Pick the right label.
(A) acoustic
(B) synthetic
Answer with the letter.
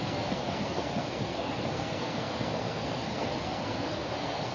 B